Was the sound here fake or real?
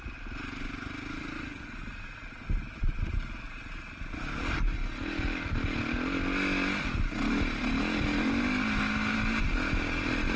real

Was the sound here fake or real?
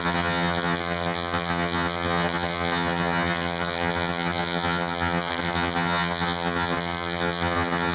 fake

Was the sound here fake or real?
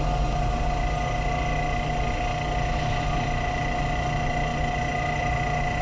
real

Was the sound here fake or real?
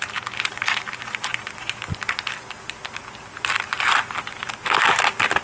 real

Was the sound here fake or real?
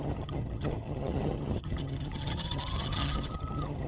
fake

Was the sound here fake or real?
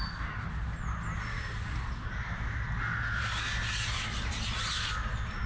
real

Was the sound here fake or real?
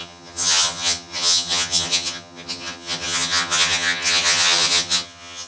fake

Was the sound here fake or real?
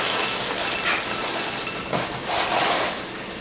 real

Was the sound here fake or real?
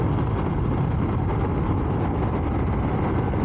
real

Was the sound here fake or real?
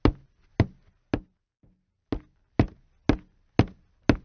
real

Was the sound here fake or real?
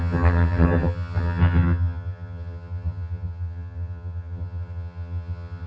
fake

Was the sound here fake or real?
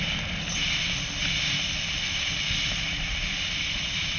real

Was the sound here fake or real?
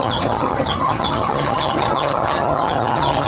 fake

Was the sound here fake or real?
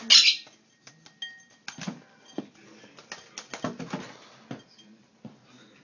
real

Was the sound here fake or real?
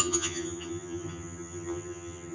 fake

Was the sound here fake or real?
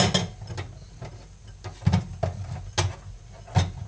real